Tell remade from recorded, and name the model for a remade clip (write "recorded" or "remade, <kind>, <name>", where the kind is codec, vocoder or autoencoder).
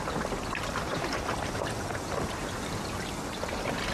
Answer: recorded